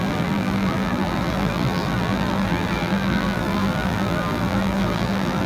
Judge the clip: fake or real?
fake